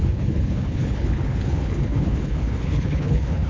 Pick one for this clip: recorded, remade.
remade